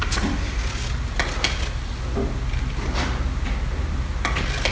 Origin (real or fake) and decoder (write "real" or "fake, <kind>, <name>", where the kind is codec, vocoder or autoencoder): real